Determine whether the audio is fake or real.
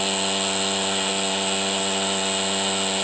real